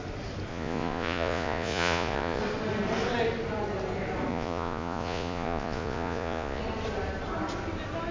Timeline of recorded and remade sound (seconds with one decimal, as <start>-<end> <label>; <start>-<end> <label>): 0.0-0.5 recorded; 0.5-2.4 remade; 2.4-4.3 recorded; 4.3-6.6 remade; 6.6-8.1 recorded